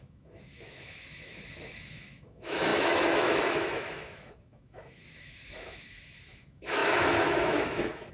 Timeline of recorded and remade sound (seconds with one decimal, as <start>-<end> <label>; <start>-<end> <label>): 0.0-8.1 remade